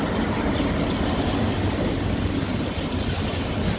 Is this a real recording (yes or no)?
yes